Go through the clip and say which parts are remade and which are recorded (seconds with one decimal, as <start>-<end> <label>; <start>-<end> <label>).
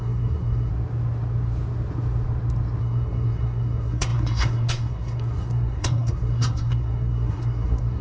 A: 0.0-0.7 remade; 0.7-2.8 recorded; 2.8-8.0 remade